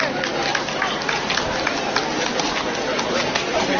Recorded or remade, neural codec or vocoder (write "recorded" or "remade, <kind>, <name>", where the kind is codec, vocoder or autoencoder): recorded